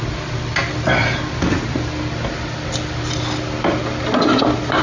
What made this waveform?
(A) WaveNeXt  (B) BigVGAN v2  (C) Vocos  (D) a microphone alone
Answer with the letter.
D